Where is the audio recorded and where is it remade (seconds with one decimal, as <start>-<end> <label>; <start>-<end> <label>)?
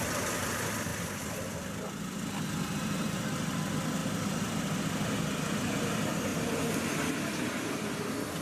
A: 0.0-8.4 recorded